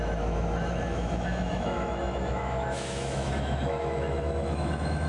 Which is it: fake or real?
fake